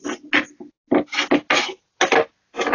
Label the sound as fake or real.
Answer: real